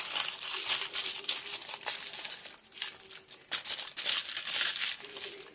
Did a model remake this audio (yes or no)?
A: no